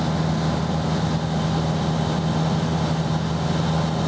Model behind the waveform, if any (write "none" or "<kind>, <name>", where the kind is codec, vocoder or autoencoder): none